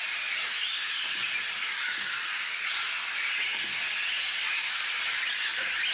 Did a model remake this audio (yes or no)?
no